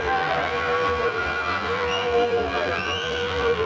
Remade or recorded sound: remade